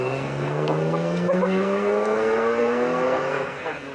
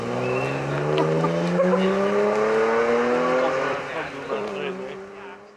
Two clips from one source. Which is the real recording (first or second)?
second